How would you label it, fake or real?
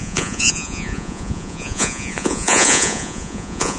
fake